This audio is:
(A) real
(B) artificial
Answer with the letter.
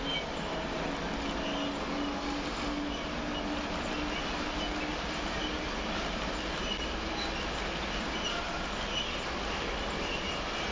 A